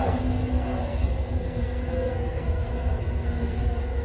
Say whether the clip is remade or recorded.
remade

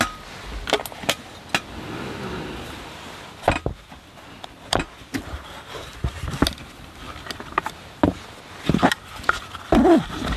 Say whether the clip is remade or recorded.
recorded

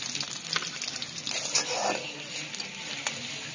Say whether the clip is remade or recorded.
recorded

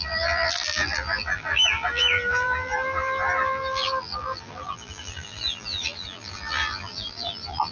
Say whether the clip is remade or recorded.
remade